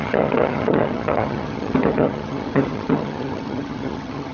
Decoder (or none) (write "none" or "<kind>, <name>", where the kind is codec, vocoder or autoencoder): vocoder, HiFi-GAN